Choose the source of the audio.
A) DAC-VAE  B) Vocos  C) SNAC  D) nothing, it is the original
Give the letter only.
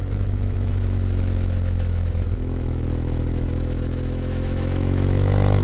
A